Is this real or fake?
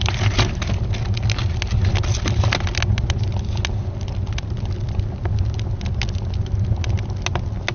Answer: real